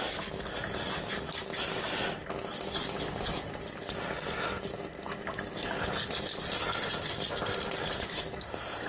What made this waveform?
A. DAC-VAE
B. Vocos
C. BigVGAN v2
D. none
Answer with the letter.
D